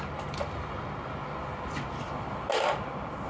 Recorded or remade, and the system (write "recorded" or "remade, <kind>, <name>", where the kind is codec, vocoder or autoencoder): recorded